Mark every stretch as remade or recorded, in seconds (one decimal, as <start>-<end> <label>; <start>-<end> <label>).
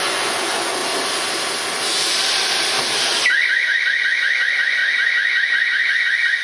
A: 0.0-0.8 remade; 0.8-3.0 recorded; 3.0-6.4 remade